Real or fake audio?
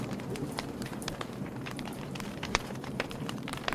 fake